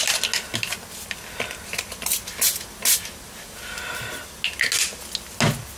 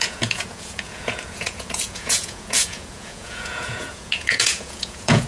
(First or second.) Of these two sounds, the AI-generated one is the second